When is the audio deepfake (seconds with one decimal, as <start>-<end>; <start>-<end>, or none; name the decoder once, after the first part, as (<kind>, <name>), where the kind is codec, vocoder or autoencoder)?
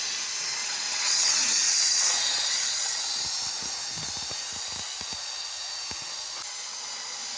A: 0.6-3.0 (vocoder, WaveNeXt)